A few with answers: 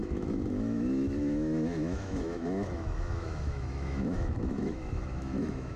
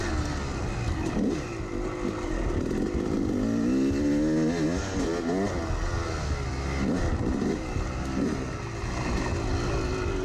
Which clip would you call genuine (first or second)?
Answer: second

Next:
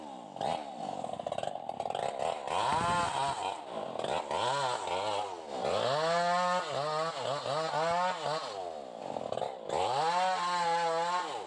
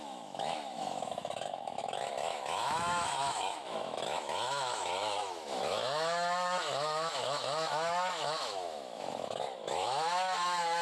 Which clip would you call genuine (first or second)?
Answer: first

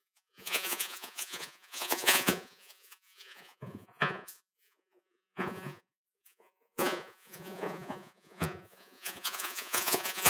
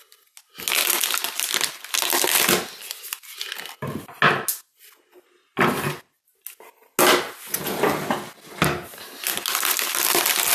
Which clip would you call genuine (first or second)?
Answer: second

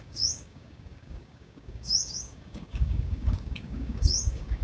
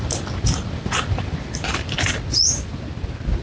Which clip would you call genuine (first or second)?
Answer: second